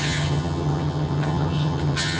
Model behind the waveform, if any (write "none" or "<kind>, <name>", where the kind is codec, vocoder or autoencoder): vocoder, HiFi-GAN